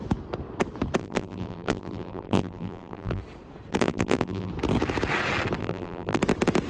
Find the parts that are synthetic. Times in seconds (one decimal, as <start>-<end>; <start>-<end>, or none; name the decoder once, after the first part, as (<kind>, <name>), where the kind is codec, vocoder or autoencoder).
1.0-3.2 (vocoder, BigVGAN v2); 3.7-4.5; 5.6-6.2